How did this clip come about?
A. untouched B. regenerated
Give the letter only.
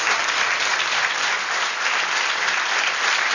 A